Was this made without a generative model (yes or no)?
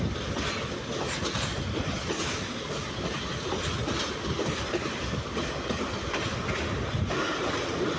yes